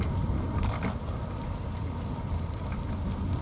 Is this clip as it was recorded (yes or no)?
yes